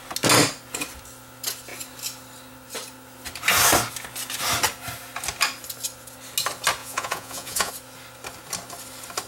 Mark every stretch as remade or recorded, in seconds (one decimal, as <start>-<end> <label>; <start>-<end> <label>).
0.0-6.8 recorded; 6.8-7.7 remade; 7.7-9.3 recorded